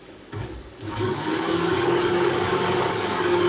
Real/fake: fake